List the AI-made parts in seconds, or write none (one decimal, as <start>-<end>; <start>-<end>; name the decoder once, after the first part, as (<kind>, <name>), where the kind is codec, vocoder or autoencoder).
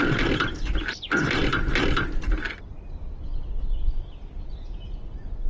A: 0.0-1.4 (vocoder, BigVGAN v2); 2.8-3.3; 3.8-5.5